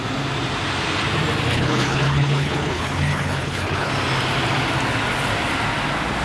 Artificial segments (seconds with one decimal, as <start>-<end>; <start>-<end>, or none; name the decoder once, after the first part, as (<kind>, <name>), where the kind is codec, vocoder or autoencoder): 1.5-3.9 (codec, HILCodec)

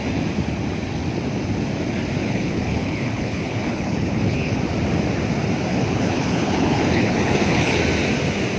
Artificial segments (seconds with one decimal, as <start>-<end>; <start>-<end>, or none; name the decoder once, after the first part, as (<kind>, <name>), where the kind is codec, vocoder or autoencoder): 2.2-4.6 (codec, HILCodec); 5.7-7.8

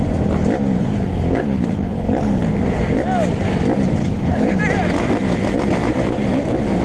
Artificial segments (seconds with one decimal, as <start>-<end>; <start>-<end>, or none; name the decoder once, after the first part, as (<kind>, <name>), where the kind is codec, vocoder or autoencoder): 0.8-2.4 (codec, HILCodec); 4.0-4.6

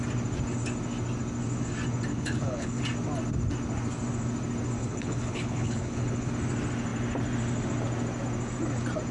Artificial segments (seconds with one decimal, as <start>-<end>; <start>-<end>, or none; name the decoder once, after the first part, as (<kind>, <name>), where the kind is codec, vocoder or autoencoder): 2.1-2.8 (codec, HILCodec); 4.8-6.3

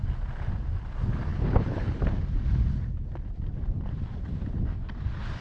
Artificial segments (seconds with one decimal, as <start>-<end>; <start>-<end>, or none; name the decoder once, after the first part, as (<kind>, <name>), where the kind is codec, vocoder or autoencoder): 1.3-2.0 (codec, HILCodec)

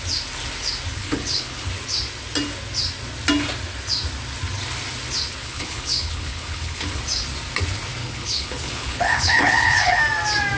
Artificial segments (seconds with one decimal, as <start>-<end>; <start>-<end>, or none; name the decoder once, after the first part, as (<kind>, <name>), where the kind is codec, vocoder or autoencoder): 0.9-1.7 (codec, HILCodec); 5.4-7.0; 8.0-10.0